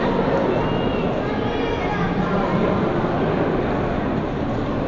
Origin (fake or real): real